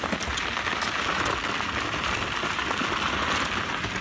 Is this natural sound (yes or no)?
yes